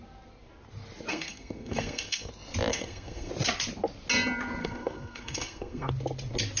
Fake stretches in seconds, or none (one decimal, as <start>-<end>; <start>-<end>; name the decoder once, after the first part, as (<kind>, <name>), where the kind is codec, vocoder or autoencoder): 1.1-2.3 (codec, SNAC); 2.7-3.3; 4.6-5.9